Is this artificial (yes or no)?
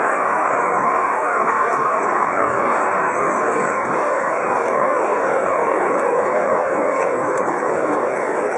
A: yes